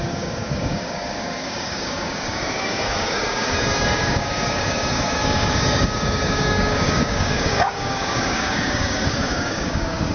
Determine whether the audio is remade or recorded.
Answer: remade